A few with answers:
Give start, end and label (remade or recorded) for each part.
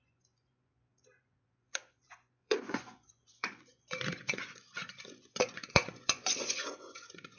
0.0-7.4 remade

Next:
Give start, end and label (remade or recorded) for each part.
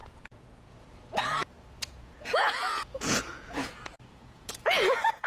0.0-5.3 remade